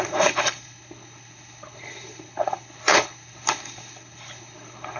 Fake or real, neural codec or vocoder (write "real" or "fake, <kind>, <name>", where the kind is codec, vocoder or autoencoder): fake, codec, HILCodec